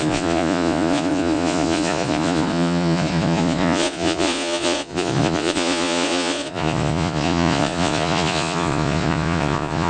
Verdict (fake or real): fake